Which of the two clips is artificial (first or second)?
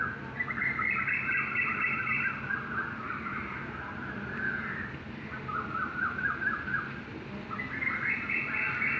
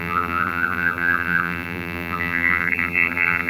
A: second